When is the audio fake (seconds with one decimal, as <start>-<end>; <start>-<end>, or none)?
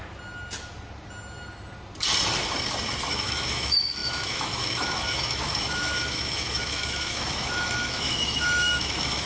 3.1-9.3